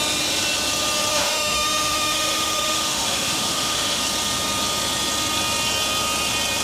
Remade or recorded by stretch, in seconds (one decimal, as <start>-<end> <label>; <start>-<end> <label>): 0.0-1.1 recorded; 1.1-4.0 remade; 4.0-6.6 recorded